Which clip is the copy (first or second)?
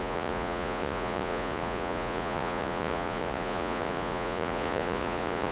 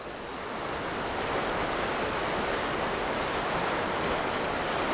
first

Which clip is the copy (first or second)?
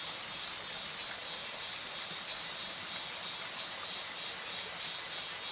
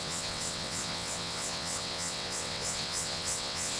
second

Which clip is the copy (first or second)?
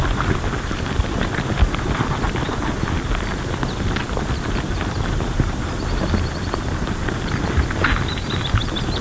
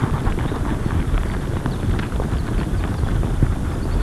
second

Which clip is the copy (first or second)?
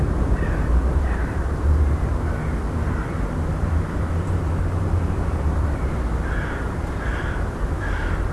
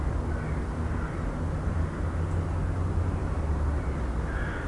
first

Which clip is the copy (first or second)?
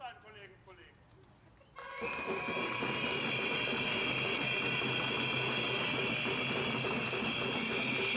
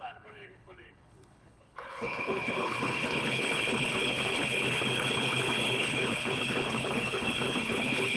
second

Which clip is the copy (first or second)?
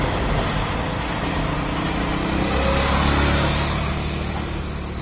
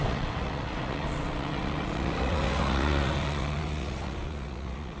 second